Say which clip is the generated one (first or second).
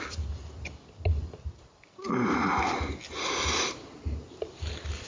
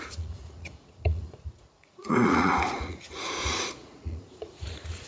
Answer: second